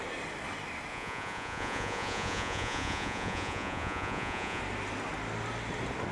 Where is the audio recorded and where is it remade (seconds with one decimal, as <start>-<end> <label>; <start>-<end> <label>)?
0.0-0.9 recorded; 0.9-4.6 remade; 4.6-6.1 recorded